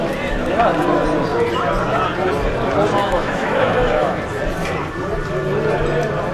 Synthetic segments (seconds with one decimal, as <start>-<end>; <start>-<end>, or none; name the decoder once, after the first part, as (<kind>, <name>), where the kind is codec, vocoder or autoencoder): 3.0-4.2 (autoencoder, DAC-VAE)